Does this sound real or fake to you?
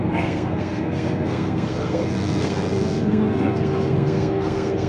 fake